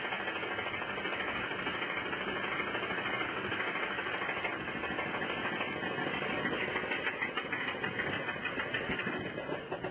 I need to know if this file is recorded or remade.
recorded